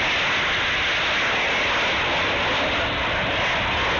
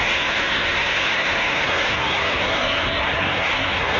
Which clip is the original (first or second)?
first